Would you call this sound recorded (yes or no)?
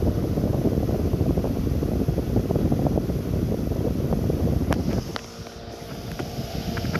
yes